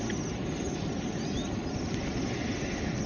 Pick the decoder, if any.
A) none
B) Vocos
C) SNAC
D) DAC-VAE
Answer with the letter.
A